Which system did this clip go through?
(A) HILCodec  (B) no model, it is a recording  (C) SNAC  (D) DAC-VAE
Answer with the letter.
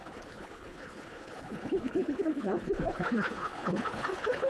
A